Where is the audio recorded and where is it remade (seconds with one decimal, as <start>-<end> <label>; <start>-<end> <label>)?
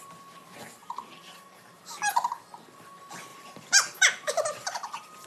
0.0-0.8 recorded; 0.8-1.8 remade; 1.8-3.3 recorded; 3.3-5.3 remade